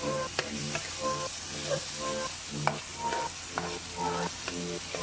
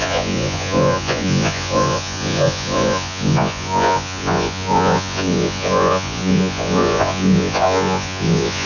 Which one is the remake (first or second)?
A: second